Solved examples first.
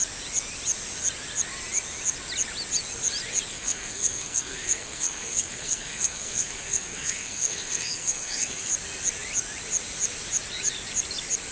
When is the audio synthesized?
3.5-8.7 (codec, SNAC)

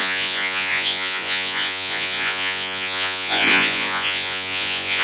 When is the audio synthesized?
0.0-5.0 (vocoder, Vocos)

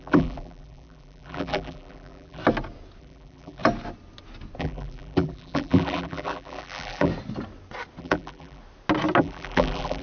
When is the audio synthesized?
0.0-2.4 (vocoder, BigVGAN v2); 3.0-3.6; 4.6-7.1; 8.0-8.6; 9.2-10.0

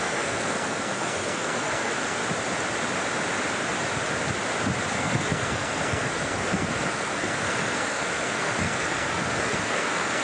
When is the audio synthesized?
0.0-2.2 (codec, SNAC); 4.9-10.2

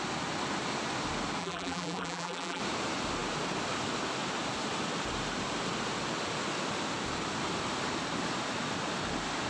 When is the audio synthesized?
1.4-2.6 (vocoder, BigVGAN v2)

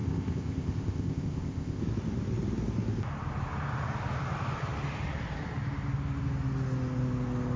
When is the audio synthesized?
0.0-1.8 (codec, ZipCodec)

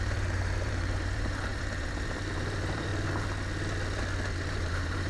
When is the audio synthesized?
0.0-2.9 (vocoder, BigVGAN v2); 4.6-5.1

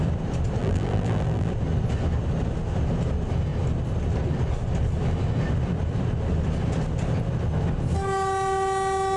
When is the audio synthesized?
0.6-1.5 (vocoder, BigVGAN v2)